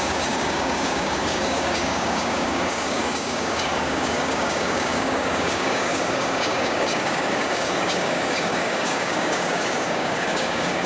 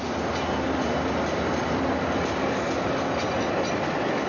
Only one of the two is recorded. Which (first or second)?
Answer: second